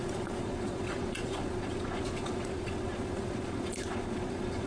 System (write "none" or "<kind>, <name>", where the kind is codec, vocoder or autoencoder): vocoder, Vocos